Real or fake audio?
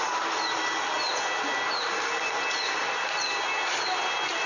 real